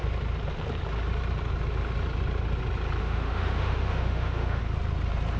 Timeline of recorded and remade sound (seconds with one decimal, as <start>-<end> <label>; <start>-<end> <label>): 0.0-3.0 recorded; 3.0-4.6 remade; 4.6-5.4 recorded